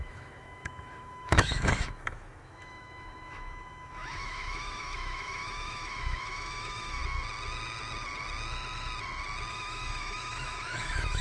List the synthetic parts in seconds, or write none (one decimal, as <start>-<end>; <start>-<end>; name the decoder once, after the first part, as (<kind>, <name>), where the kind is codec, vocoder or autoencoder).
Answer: 0.0-7.0 (autoencoder, DAC-VAE); 9.5-11.2